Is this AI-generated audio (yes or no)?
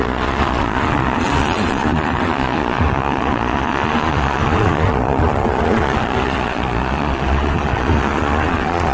yes